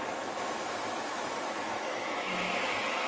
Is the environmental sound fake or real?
fake